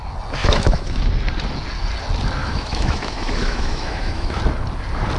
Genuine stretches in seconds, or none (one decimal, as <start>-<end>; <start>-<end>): 0.0-0.4; 1.1-2.4; 4.4-5.2